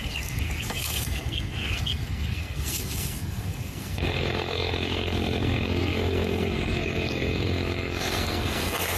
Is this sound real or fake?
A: fake